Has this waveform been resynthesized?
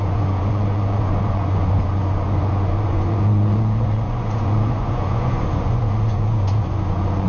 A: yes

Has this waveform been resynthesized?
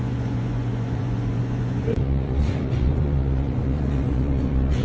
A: yes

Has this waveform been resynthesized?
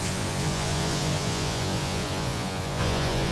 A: yes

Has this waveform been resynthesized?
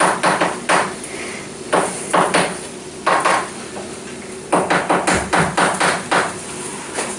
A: no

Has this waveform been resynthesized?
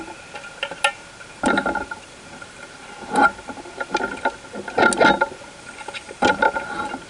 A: no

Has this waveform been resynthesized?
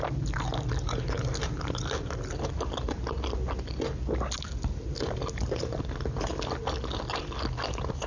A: no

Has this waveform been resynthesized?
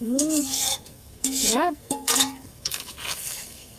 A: yes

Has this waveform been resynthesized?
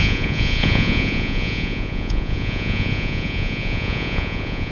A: yes